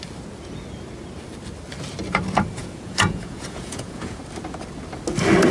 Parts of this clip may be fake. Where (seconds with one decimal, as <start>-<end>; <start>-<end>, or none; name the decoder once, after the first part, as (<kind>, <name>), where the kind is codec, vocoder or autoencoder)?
2.6-4.2 (vocoder, Vocos)